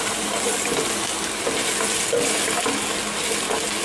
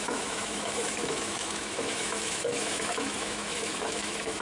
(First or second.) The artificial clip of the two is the second